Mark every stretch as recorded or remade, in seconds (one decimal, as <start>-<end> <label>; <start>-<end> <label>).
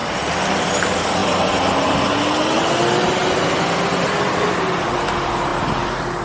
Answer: 0.0-6.2 recorded